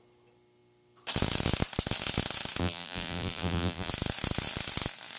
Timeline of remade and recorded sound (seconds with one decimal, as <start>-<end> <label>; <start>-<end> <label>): 0.0-2.6 recorded; 2.6-3.9 remade; 3.9-5.2 recorded